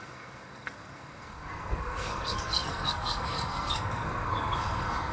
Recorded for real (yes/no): no